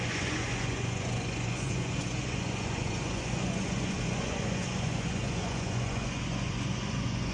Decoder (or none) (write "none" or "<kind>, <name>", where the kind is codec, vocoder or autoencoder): vocoder, Vocos